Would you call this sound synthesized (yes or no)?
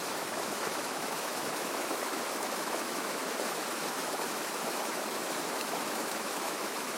yes